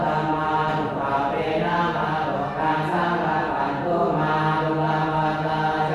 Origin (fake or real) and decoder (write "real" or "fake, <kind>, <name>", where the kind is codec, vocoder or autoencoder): real